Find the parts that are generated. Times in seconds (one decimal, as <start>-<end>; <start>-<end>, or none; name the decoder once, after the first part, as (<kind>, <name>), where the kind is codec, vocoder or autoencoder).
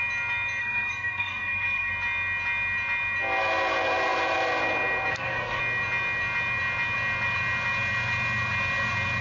0.6-1.9 (codec, SNAC); 5.1-5.6